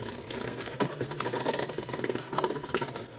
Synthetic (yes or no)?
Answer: yes